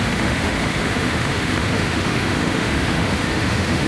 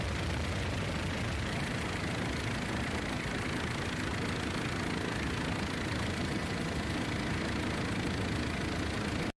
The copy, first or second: first